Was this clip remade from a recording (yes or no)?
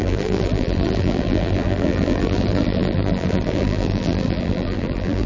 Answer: yes